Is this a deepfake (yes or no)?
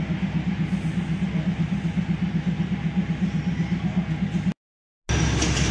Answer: no